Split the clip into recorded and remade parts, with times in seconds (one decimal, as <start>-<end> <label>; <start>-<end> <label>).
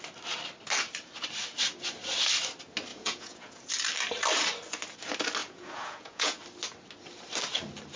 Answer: 0.0-2.9 recorded; 2.9-3.7 remade; 3.7-5.4 recorded; 5.4-6.4 remade; 6.4-8.0 recorded